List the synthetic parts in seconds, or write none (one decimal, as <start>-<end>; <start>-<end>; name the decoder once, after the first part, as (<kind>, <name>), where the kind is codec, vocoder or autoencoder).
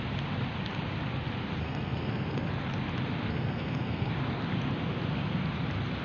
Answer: 1.6-2.5 (codec, SNAC); 3.3-4.1